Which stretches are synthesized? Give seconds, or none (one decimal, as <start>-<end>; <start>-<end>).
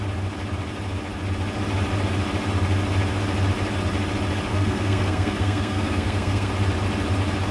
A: 4.5-6.5